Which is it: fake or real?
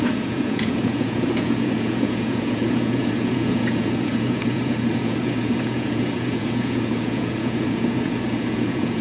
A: fake